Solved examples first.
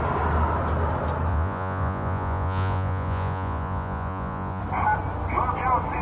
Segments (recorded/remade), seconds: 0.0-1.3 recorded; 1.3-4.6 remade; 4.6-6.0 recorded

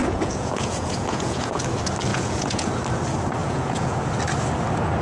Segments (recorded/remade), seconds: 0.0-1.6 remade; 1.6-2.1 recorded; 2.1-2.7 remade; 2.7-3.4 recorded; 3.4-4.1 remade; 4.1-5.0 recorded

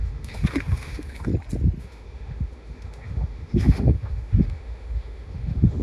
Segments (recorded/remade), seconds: 0.0-1.3 remade; 1.3-1.8 recorded; 1.8-5.8 remade

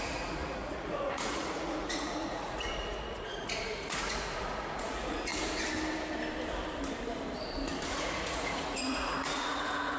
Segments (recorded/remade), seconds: 0.0-5.3 remade; 5.3-7.9 recorded; 7.9-10.0 remade